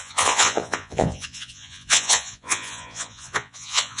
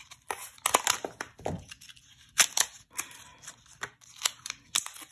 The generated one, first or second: first